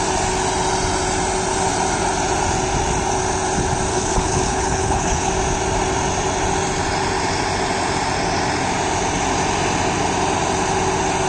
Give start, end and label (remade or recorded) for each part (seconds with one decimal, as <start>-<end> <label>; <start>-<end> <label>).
0.0-3.9 recorded; 3.9-5.3 remade; 5.3-11.3 recorded